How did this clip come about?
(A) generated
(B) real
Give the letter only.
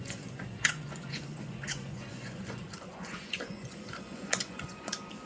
A